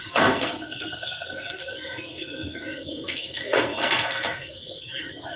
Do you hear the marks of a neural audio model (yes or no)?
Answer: yes